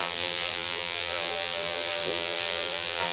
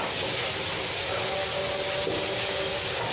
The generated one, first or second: first